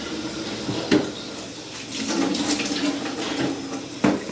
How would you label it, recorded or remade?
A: recorded